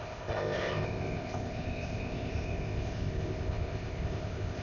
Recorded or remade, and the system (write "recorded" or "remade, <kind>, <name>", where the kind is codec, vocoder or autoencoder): remade, codec, ZipCodec